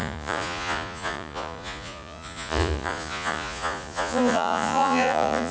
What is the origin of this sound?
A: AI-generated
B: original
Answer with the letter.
A